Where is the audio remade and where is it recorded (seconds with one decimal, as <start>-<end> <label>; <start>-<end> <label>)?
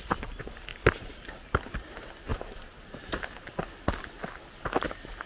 0.0-5.3 recorded